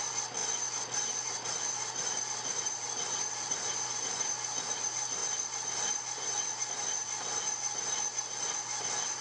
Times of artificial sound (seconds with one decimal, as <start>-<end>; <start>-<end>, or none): none